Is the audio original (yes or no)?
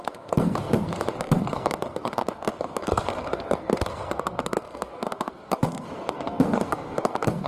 no